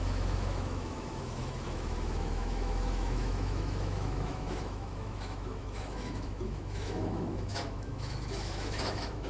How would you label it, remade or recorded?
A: remade